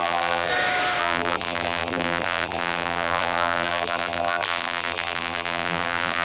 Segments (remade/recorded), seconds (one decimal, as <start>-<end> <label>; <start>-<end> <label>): 0.0-0.5 remade; 0.5-1.0 recorded; 1.0-6.2 remade